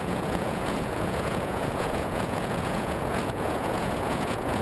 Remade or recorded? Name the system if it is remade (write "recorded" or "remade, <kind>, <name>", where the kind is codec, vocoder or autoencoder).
remade, vocoder, Vocos